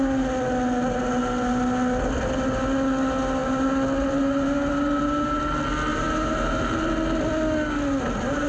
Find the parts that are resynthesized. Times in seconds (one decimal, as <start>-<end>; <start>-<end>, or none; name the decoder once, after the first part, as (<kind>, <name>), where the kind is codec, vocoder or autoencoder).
3.4-5.4 (vocoder, BigVGAN v2); 5.9-6.9